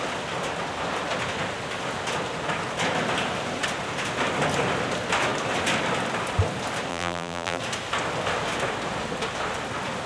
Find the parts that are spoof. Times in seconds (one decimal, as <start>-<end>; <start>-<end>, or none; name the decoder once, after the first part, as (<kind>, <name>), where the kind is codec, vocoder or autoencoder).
6.9-7.6 (vocoder, BigVGAN v2)